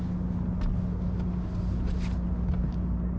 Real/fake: real